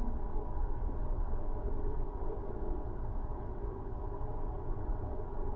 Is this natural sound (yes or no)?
no